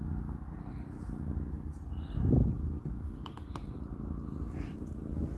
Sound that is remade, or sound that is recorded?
recorded